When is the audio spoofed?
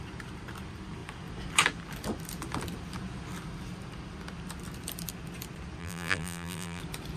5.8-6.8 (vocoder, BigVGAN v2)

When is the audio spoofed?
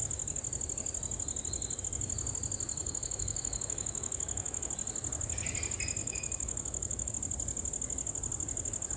2.8-4.7 (autoencoder, DAC-VAE); 6.0-7.1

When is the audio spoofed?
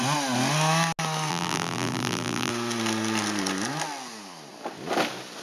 1.3-2.5 (vocoder, BigVGAN v2)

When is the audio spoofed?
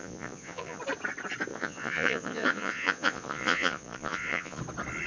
0.0-0.8 (vocoder, Vocos); 1.5-4.6